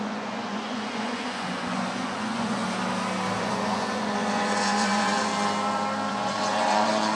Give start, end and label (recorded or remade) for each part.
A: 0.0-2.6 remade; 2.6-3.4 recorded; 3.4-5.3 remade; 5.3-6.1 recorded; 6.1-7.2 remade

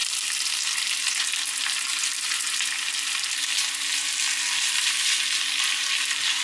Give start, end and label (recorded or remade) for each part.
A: 0.0-6.4 recorded

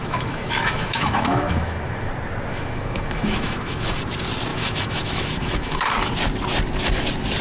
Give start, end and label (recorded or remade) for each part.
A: 0.0-2.1 remade; 2.1-2.5 recorded; 2.5-3.9 remade; 3.9-4.5 recorded; 4.5-5.9 remade; 5.9-7.4 recorded